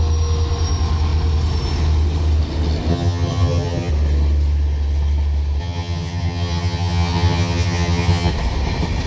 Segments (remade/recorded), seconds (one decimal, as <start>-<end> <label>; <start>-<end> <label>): 0.0-2.9 recorded; 2.9-3.9 remade; 3.9-5.6 recorded; 5.6-8.3 remade; 8.3-9.1 recorded